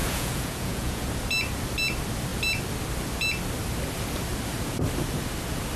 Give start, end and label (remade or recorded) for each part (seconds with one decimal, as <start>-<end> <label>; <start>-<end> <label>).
0.0-1.1 remade; 1.1-5.8 recorded